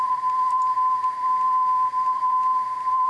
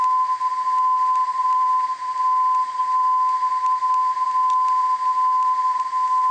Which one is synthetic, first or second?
first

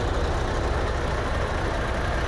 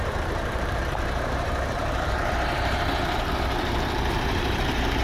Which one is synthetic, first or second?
second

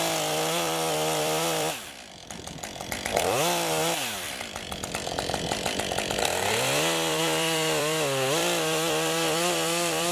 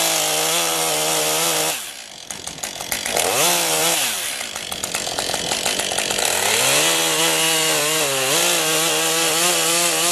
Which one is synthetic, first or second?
first